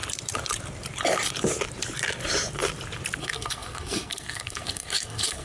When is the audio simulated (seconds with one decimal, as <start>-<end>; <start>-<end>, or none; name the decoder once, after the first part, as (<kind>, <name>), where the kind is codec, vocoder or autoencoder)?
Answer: 3.2-5.4 (codec, SNAC)